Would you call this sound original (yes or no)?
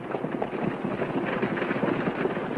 yes